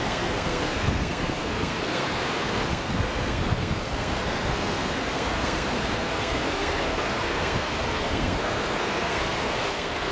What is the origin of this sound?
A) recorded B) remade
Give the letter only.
B